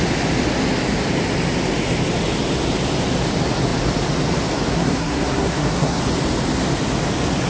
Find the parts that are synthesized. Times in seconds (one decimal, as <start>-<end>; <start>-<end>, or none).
4.7-6.0